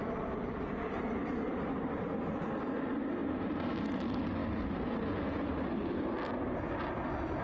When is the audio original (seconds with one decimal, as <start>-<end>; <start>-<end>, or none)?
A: 0.0-3.2; 4.0-7.4